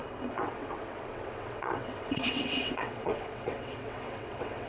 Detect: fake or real fake